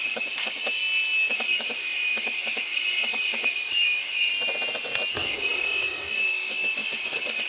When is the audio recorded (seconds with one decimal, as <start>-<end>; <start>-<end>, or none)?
0.8-1.3; 4.3-5.1